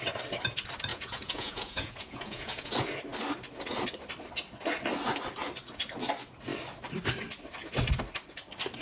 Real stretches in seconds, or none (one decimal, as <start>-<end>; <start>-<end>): 0.0-0.9; 2.7-8.8